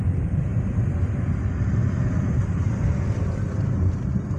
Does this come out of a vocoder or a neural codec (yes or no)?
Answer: no